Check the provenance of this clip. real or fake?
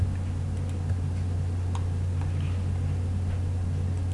real